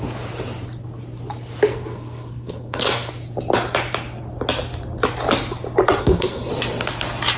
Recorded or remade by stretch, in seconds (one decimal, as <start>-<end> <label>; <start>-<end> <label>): 0.0-1.7 recorded; 1.7-3.1 remade; 3.1-6.0 recorded; 6.0-6.5 remade; 6.5-7.4 recorded